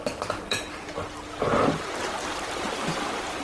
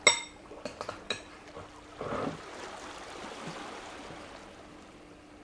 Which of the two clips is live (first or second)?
second